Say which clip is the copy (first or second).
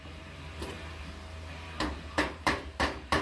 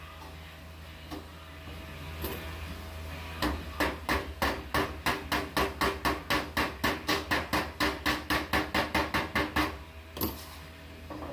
first